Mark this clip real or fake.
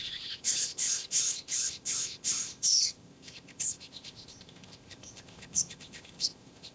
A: fake